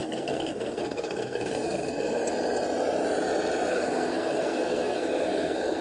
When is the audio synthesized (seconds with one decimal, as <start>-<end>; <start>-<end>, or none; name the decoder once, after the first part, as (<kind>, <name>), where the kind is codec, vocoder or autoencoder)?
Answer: 0.0-2.2 (codec, SNAC); 3.7-5.8